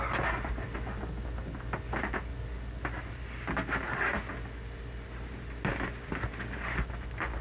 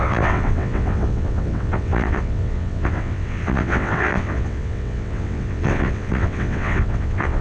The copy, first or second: second